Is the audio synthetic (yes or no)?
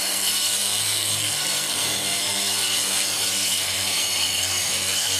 yes